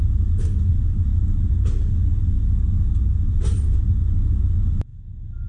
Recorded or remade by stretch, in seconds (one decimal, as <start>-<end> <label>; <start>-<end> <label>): 0.0-0.7 remade; 0.7-3.3 recorded; 3.3-3.9 remade; 3.9-5.5 recorded